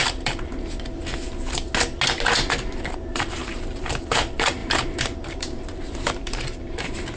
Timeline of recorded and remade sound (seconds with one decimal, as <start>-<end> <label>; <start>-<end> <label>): 0.0-0.5 remade; 0.5-3.1 recorded; 3.1-7.2 remade